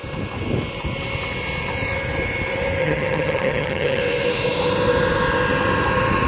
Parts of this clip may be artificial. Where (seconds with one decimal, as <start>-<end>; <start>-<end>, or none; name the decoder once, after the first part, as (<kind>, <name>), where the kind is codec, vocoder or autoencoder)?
2.8-4.0 (vocoder, HiFi-GAN)